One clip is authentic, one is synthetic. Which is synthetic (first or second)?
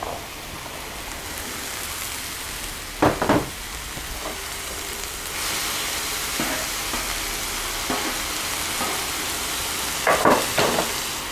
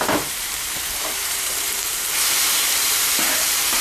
second